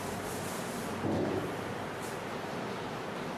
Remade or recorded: recorded